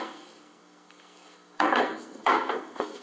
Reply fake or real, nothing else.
fake